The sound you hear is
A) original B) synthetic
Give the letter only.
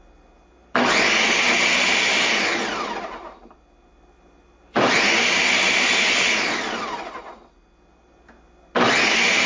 A